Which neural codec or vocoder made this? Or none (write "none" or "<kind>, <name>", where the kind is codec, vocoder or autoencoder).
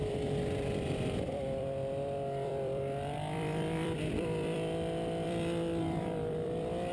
vocoder, BigVGAN v2